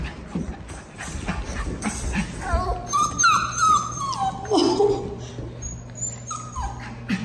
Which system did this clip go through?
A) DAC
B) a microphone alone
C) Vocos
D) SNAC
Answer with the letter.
B